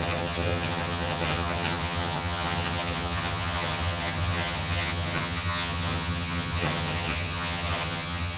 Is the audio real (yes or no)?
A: no